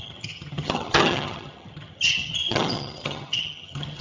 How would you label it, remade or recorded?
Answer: remade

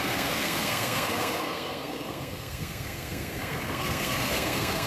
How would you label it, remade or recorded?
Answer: remade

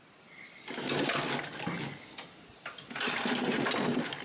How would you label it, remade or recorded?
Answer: recorded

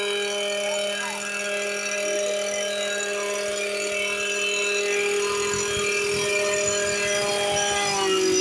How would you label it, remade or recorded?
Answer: recorded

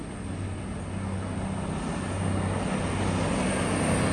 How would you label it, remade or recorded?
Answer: recorded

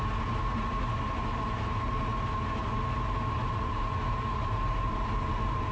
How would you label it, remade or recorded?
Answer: recorded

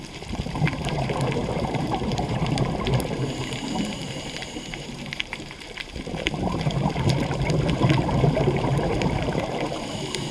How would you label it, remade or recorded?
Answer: remade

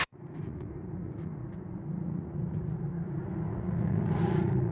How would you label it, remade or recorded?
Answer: remade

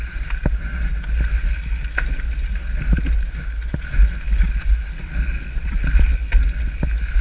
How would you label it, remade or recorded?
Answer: recorded